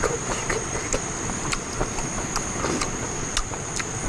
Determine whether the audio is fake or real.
real